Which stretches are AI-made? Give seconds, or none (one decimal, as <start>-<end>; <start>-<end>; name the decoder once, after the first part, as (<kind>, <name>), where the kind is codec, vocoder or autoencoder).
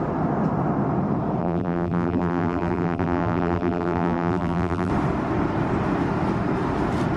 1.4-4.9 (vocoder, BigVGAN v2)